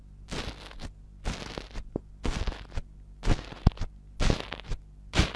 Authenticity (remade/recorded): recorded